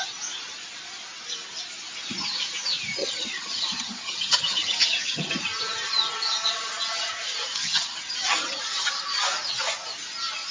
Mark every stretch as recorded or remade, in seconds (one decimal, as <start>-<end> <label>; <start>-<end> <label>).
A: 0.0-3.0 recorded; 3.0-5.3 remade; 5.3-7.6 recorded; 7.6-8.6 remade; 8.6-10.5 recorded